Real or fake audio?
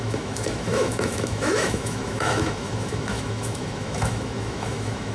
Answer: fake